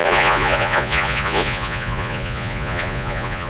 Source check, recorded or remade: remade